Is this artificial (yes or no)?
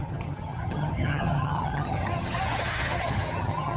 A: yes